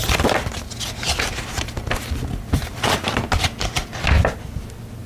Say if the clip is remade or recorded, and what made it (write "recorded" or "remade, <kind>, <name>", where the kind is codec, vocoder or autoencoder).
recorded